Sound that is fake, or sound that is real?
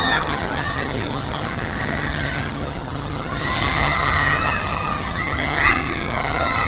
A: fake